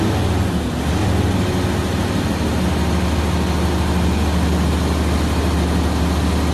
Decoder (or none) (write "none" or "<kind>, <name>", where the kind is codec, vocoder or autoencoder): none